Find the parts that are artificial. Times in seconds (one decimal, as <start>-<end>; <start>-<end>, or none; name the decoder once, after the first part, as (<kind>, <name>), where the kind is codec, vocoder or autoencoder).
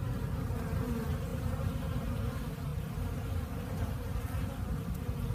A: 1.3-2.2 (vocoder, BigVGAN v2)